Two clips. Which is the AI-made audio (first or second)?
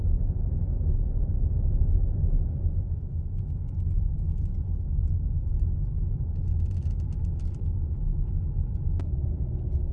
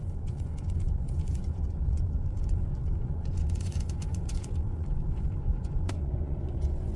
second